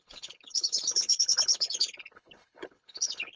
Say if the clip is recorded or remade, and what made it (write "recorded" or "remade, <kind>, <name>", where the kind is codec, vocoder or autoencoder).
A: remade, codec, HILCodec